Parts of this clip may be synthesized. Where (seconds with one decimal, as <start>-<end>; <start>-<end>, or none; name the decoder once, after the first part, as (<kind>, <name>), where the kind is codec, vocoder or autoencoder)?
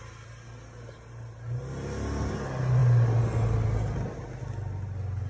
none